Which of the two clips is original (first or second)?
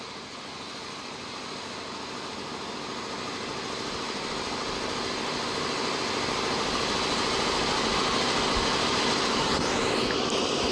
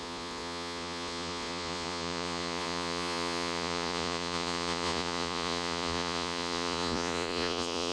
first